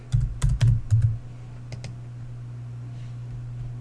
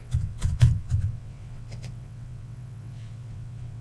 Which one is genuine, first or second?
first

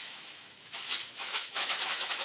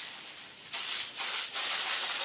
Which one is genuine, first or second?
second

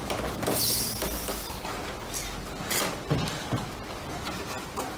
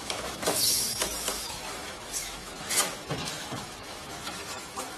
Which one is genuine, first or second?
first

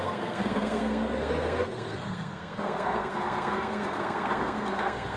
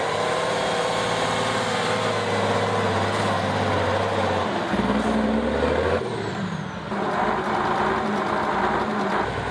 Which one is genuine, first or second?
second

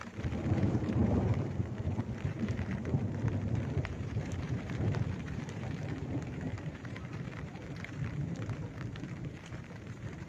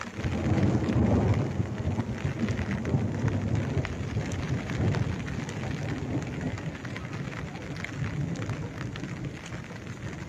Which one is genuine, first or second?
second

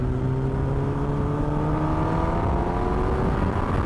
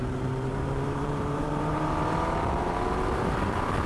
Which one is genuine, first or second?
first